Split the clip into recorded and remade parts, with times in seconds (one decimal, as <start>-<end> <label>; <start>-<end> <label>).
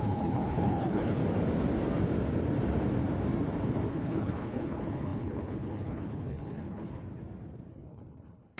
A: 0.0-1.2 remade; 1.2-3.9 recorded; 3.9-7.0 remade; 7.0-7.7 recorded; 7.7-8.6 remade